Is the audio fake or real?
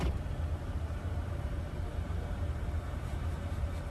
fake